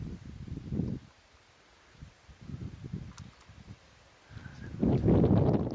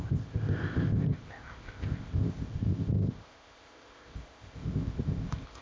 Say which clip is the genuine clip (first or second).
first